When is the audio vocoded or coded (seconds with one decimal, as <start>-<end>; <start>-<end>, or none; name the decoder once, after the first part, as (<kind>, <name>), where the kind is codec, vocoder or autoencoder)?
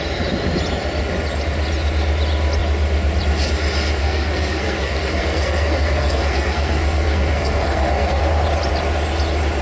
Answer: 4.0-8.2 (codec, SNAC)